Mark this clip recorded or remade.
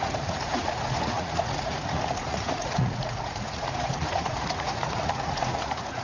remade